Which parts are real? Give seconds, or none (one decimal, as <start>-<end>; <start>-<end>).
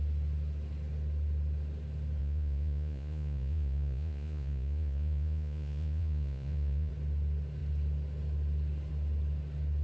0.0-2.2; 6.9-9.8